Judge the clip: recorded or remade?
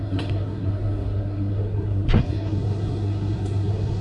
remade